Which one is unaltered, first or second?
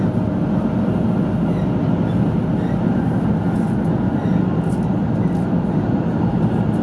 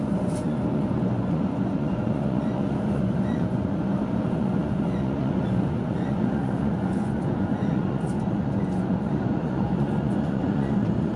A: first